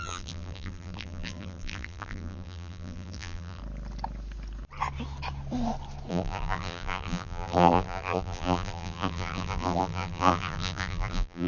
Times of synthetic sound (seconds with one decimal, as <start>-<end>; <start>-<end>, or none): 0.0-3.6; 6.1-11.5